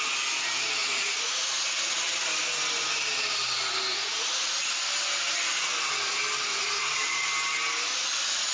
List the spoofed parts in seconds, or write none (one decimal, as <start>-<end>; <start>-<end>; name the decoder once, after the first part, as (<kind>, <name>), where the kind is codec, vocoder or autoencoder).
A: 0.8-2.3 (vocoder, Vocos); 3.9-4.5; 6.5-7.3